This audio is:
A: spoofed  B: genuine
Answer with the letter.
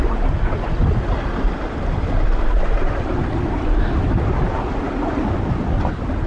B